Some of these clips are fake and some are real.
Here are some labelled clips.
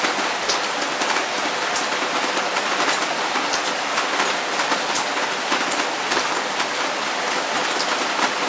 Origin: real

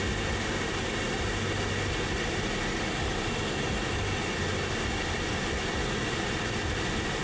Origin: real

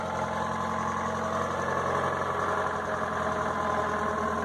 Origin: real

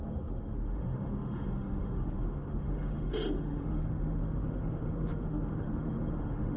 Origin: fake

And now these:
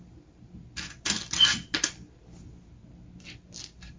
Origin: real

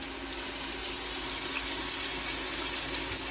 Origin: real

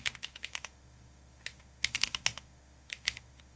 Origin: fake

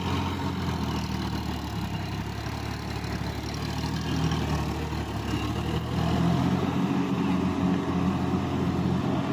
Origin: real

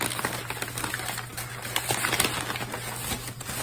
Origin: real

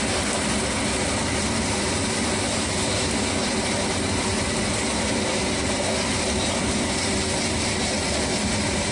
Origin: real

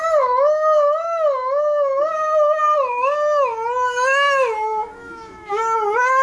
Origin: fake